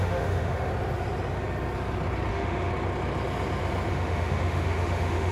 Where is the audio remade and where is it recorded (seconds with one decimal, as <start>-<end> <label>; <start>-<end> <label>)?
0.0-0.7 remade; 0.7-2.3 recorded; 2.3-2.7 remade; 2.7-3.9 recorded; 3.9-5.3 remade